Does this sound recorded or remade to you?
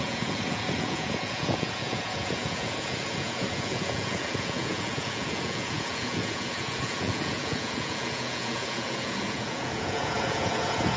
remade